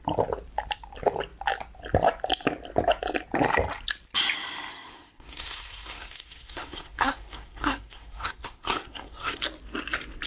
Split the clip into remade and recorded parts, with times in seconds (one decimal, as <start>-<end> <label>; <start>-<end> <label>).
0.0-4.7 recorded; 4.7-9.4 remade; 9.4-10.3 recorded